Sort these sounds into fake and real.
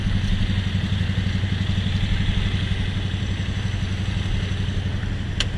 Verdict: real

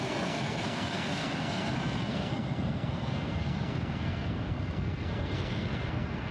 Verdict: fake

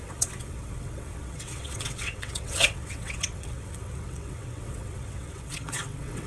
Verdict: fake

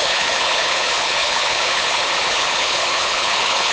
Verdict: fake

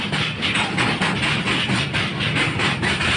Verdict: real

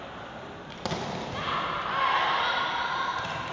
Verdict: real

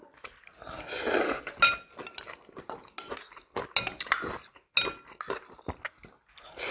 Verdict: real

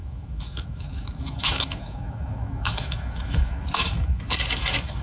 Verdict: fake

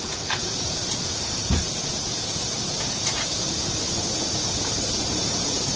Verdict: fake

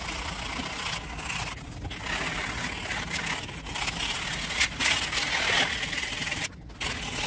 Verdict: real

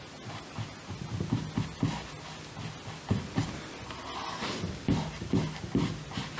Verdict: real